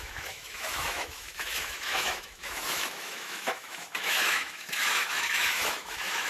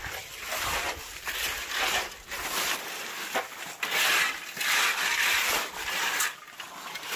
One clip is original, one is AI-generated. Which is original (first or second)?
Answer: second